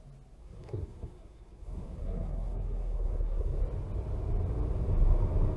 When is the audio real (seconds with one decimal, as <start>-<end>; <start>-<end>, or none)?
0.0-0.4; 3.6-5.6